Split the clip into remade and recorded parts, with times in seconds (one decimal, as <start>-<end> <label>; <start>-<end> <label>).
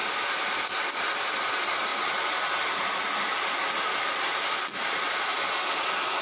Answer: 0.0-6.2 recorded